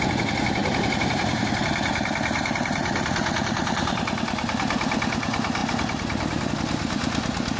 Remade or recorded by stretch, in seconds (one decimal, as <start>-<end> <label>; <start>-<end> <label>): 0.0-0.6 recorded; 0.6-1.6 remade; 1.6-7.6 recorded